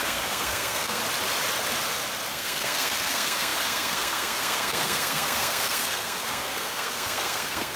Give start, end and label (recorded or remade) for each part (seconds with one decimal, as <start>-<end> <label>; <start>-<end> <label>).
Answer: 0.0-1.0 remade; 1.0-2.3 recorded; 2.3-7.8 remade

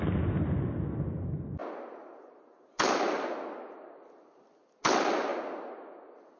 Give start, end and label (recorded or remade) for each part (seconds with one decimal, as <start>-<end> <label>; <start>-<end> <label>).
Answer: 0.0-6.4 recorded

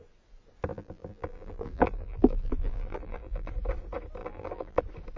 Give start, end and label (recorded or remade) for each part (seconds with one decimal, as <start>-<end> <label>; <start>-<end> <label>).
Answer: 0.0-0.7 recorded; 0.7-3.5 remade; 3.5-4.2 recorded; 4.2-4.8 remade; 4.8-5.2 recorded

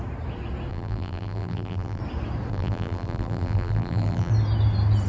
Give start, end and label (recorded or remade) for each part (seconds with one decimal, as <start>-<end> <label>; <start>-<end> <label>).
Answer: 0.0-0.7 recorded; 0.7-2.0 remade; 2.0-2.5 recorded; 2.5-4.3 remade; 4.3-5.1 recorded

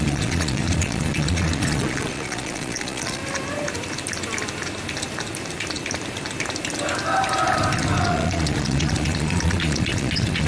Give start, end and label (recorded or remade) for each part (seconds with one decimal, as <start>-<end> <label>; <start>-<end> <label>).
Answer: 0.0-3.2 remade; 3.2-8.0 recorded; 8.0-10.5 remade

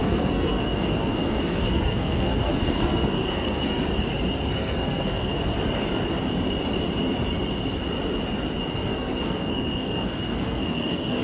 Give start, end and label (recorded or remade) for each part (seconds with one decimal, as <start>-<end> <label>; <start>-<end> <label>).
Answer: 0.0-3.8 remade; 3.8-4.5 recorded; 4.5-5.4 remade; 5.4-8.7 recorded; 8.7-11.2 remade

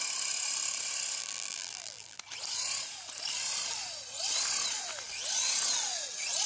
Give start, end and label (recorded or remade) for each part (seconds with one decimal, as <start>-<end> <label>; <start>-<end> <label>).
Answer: 0.0-1.2 recorded; 1.2-2.2 remade; 2.2-6.5 recorded